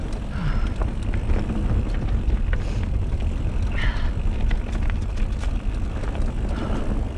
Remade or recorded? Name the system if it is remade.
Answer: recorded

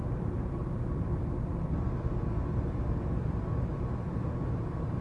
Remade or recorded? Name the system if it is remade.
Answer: recorded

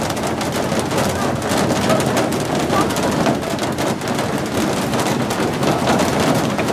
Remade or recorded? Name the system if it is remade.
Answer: recorded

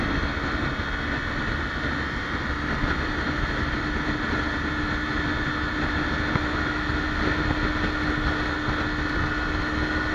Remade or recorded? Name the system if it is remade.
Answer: recorded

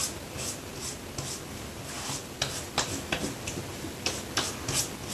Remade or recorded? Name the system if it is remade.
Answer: recorded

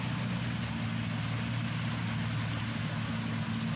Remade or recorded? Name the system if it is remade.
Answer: recorded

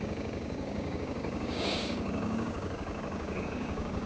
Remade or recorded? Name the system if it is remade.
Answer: remade, codec, DAC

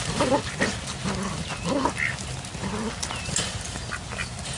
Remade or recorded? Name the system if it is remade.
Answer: recorded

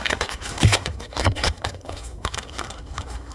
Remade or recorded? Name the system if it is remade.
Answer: remade, codec, SNAC